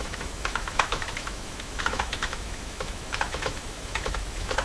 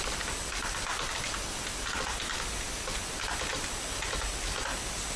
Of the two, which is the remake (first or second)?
first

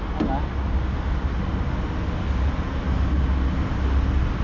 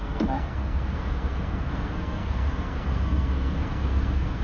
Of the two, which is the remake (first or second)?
second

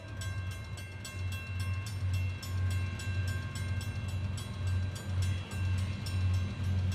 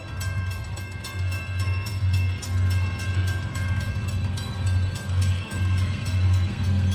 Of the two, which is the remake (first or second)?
second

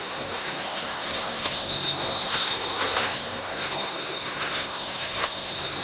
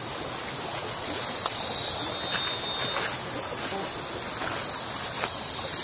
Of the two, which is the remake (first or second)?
first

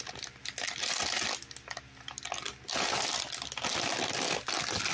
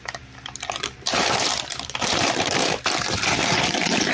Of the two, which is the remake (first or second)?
second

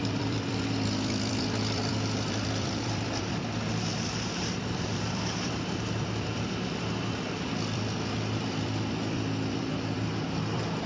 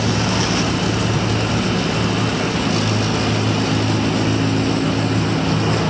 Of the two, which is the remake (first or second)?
first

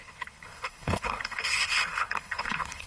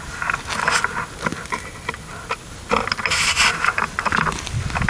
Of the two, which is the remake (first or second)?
first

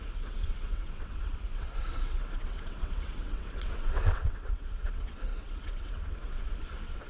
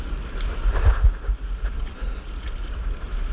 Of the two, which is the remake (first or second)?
first